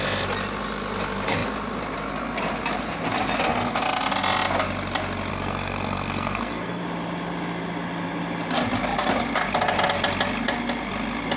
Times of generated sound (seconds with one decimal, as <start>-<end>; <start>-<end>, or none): 5.3-6.8